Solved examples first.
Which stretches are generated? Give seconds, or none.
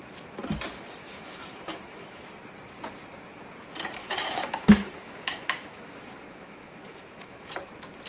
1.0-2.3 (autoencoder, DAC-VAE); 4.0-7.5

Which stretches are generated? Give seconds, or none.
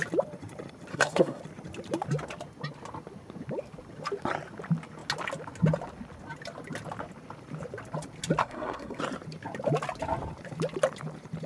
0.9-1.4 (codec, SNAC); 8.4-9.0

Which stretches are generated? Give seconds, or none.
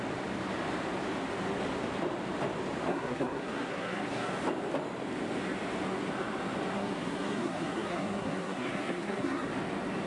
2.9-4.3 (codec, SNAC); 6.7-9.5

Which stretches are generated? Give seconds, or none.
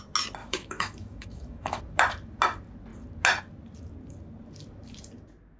0.4-1.8 (autoencoder, DAC-VAE)